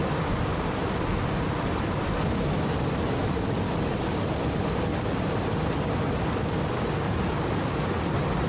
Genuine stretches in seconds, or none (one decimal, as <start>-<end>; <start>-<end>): 0.0-8.5